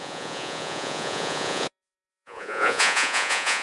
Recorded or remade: remade